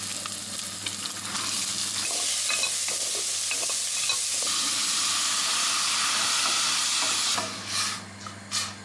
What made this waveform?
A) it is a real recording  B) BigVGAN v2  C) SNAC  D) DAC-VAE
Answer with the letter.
A